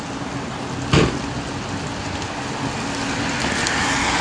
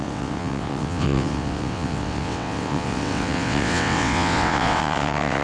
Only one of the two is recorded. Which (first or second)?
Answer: first